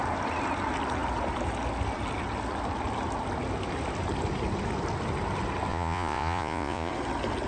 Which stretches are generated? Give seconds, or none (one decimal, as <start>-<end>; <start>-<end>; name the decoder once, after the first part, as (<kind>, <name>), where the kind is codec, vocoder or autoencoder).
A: 5.7-6.9 (vocoder, Vocos)